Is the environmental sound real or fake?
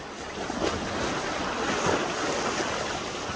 real